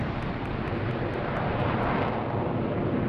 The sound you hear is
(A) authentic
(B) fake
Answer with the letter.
A